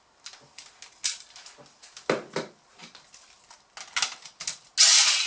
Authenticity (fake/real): real